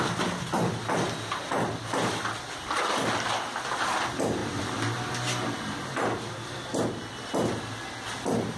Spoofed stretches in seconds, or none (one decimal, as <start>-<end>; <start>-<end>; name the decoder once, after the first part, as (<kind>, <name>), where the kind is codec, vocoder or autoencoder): none